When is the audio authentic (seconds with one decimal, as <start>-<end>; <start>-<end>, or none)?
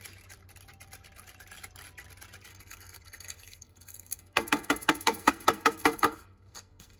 0.0-2.5